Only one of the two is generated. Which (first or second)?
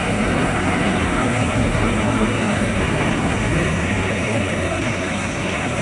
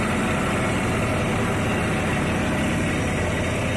first